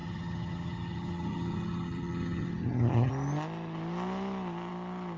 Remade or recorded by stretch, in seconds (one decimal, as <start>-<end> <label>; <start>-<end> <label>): 0.0-3.1 remade; 3.1-5.2 recorded